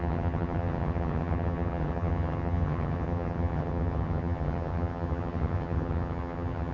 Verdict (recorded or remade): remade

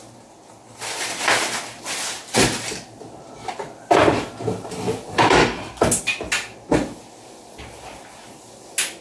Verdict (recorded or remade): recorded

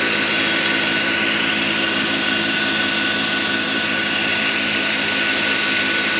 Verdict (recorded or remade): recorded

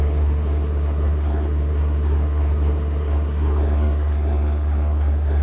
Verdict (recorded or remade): remade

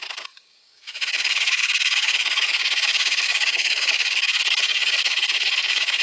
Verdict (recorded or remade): remade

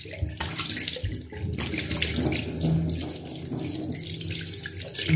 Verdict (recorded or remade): recorded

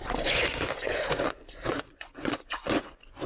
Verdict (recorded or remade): remade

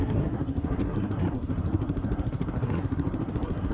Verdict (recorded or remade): remade